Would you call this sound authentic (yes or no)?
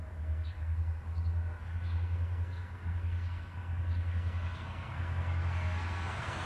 no